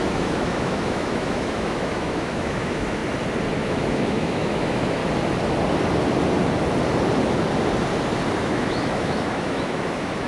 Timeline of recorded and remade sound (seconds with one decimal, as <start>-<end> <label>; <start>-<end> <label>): 0.0-3.0 remade; 3.0-3.6 recorded; 3.6-5.0 remade; 5.0-8.4 recorded; 8.4-10.3 remade